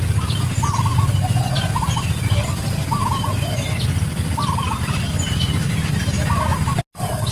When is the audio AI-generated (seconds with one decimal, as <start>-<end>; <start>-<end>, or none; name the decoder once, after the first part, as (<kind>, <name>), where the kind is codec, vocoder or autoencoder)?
none